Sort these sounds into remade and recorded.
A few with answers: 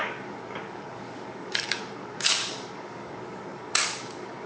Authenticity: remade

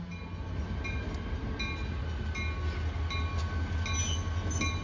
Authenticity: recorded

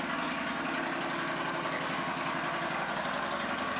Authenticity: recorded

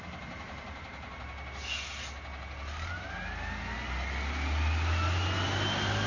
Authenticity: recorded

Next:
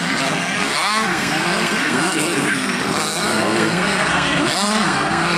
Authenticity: remade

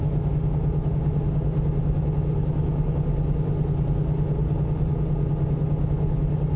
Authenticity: recorded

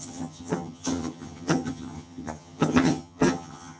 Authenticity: remade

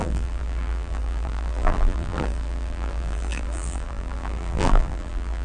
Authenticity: remade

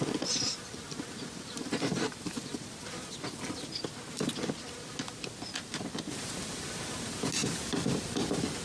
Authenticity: recorded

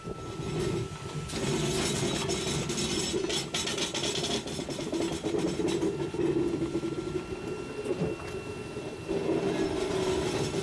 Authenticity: recorded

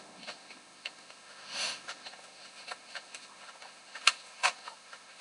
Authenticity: remade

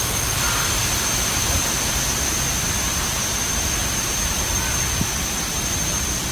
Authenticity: recorded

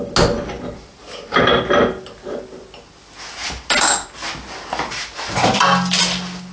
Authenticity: recorded